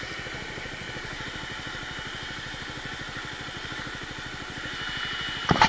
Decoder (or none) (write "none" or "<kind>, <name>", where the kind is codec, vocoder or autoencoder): none